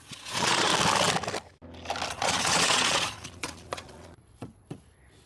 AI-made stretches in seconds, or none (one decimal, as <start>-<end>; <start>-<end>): 0.0-0.7; 2.1-5.3

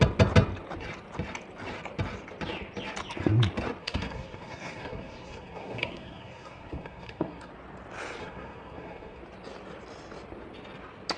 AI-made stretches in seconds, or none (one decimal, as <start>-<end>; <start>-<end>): 3.8-7.5; 8.2-9.2